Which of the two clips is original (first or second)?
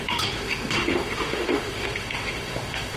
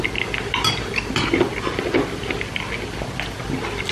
second